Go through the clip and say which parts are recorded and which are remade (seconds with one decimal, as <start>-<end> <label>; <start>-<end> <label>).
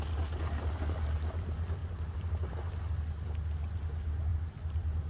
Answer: 0.0-5.1 recorded